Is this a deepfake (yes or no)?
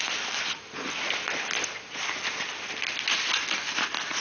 no